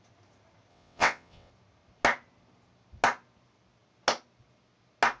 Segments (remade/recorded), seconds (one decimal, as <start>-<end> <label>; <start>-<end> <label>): 0.0-0.7 recorded; 0.7-1.5 remade; 1.5-5.2 recorded